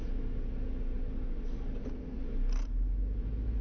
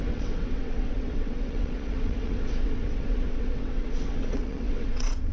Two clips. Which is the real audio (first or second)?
first